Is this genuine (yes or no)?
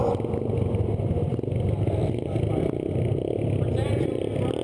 yes